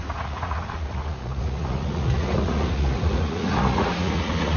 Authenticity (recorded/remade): remade